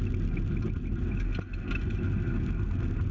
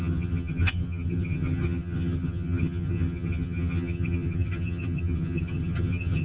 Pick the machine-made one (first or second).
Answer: second